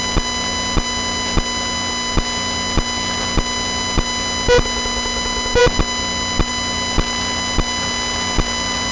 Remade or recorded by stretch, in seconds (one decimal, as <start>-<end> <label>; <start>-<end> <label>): 0.0-8.9 recorded